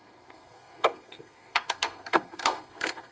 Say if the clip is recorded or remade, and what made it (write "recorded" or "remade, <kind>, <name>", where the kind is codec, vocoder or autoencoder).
remade, codec, SNAC